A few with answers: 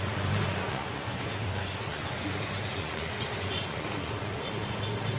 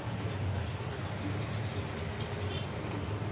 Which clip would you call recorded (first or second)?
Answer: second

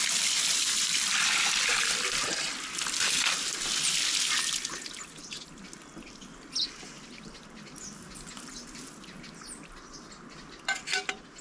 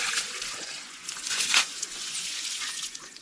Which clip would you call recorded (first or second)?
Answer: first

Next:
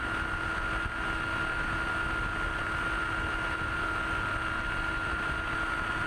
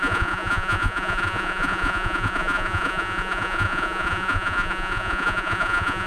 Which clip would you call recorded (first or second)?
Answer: first